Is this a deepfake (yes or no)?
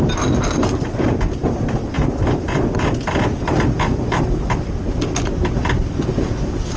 no